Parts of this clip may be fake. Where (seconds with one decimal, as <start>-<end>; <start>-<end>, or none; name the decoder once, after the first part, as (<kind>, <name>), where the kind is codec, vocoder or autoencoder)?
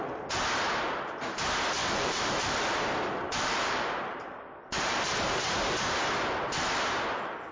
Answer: 1.8-5.6 (vocoder, BigVGAN v2)